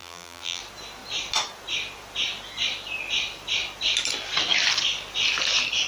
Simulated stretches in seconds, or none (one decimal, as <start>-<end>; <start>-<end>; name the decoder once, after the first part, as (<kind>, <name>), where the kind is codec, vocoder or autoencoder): 0.0-0.6 (vocoder, BigVGAN v2)